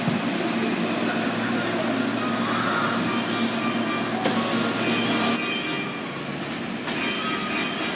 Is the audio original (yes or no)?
yes